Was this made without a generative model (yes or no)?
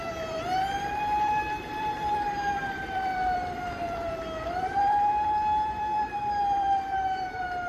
no